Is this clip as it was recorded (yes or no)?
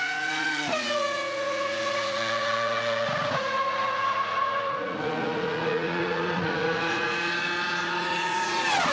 no